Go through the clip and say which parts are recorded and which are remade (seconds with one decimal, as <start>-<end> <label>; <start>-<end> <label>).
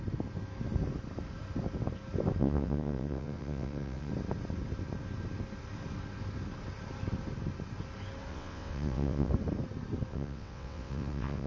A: 0.0-2.4 recorded; 2.4-4.1 remade; 4.1-8.3 recorded; 8.3-9.3 remade; 9.3-10.1 recorded; 10.1-11.5 remade